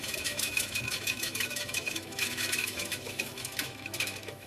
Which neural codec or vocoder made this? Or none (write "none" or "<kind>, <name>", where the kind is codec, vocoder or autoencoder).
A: autoencoder, DAC-VAE